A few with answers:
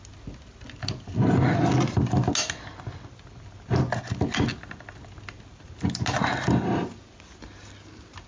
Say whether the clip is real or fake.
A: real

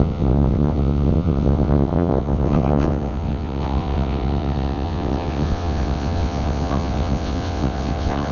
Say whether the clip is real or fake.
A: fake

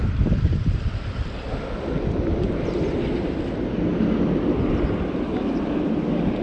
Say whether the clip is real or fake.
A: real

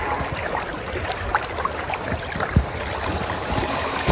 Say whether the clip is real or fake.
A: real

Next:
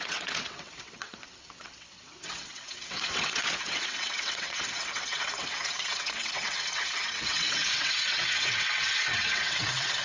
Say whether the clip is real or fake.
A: fake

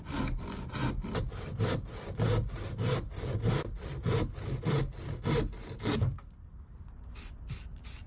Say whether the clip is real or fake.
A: real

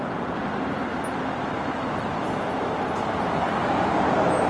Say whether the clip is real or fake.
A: real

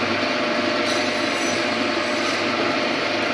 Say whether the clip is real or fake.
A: real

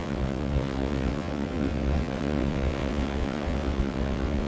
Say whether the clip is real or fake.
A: fake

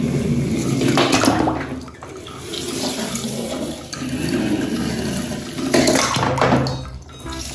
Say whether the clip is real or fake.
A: real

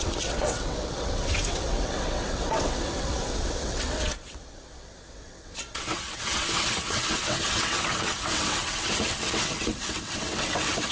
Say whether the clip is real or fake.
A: fake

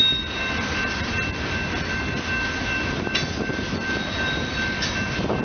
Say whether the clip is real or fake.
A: real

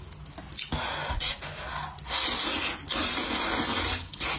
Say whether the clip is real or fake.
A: real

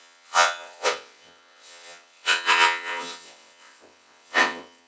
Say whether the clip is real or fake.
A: fake